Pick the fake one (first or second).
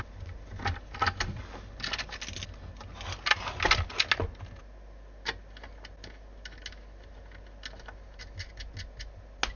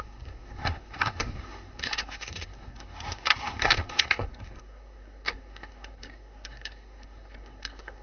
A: second